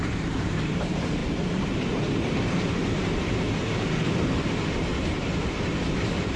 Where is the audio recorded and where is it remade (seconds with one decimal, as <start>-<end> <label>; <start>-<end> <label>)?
0.0-1.2 remade; 1.2-1.7 recorded; 1.7-6.4 remade